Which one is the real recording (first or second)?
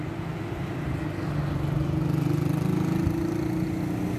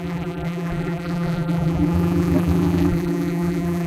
first